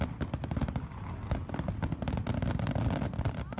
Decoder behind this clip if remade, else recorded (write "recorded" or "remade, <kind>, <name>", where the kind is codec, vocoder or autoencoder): recorded